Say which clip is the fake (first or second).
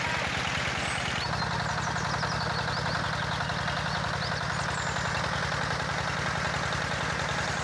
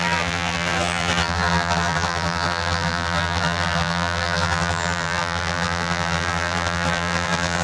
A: second